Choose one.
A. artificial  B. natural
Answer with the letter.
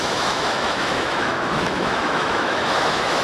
A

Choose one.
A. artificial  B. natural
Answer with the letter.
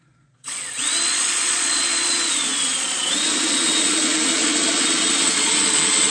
A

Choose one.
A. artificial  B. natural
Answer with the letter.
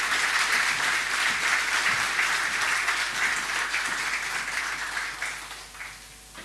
B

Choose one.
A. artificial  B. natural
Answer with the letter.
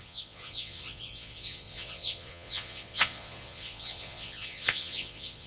A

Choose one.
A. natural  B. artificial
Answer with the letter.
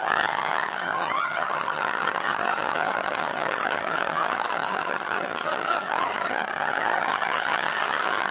B